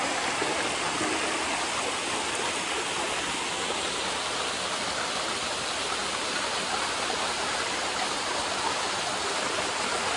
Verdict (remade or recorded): recorded